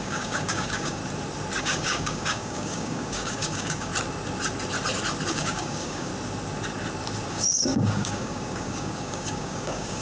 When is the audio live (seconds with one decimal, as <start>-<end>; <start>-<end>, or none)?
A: 1.0-1.6; 3.9-5.3; 6.1-7.3